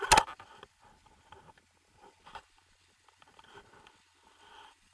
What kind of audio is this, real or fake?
real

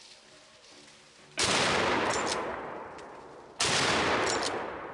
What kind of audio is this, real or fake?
real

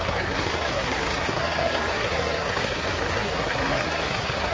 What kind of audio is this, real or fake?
fake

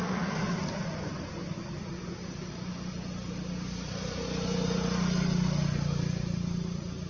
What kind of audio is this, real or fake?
real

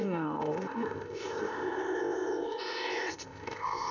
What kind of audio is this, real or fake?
fake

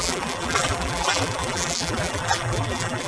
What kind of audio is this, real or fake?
fake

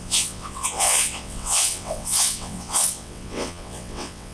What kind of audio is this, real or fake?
fake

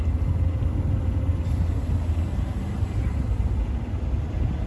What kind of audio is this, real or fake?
real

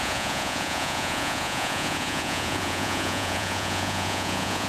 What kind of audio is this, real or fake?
fake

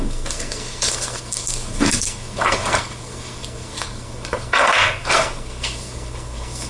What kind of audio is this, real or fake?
fake